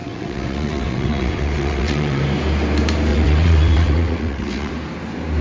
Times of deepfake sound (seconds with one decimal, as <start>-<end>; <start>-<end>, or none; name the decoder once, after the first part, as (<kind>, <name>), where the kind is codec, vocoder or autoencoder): 0.0-2.2 (vocoder, WaveNeXt); 3.1-4.7